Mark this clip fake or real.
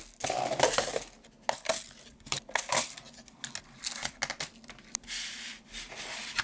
real